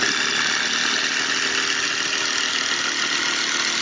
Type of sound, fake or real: real